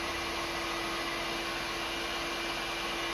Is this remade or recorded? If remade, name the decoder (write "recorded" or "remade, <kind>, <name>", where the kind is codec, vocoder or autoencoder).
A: recorded